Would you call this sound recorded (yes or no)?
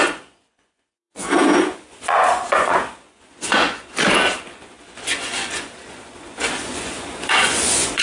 no